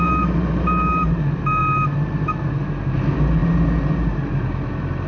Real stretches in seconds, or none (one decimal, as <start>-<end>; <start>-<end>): none